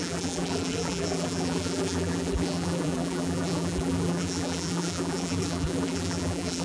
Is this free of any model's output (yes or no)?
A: no